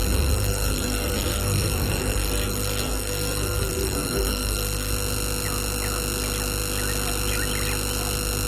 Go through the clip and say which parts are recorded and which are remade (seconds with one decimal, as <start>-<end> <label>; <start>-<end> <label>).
0.0-4.9 remade; 4.9-8.5 recorded